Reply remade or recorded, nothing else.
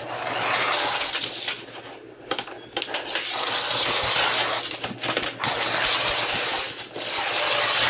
recorded